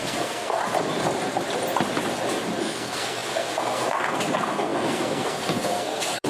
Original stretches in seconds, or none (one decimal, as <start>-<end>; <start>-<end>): 0.6-2.6